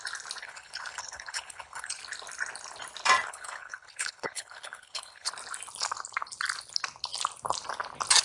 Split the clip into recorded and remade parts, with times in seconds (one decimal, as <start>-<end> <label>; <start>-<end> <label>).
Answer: 0.0-0.4 recorded; 0.4-2.0 remade; 2.0-3.3 recorded; 3.3-5.3 remade; 5.3-8.2 recorded